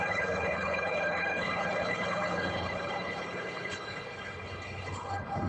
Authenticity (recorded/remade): remade